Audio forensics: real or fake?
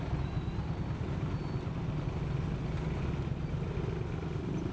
real